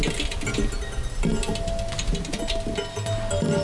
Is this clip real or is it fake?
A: real